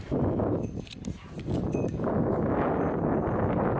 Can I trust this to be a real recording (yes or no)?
yes